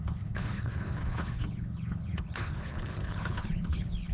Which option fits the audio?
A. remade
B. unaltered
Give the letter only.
A